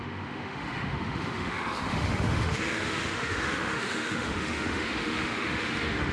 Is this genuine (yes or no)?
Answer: no